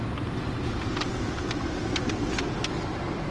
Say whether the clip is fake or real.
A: real